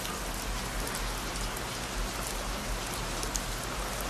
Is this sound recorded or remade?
recorded